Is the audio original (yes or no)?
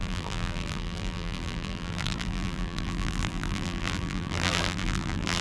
no